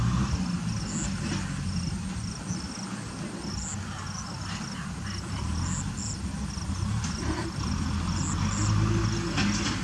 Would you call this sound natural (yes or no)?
yes